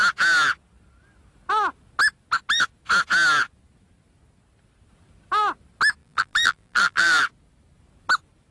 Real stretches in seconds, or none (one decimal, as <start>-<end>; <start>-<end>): 0.0-6.0; 7.2-8.5